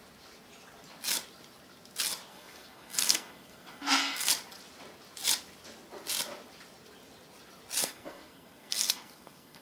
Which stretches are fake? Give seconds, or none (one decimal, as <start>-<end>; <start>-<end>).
2.3-4.3; 7.8-9.6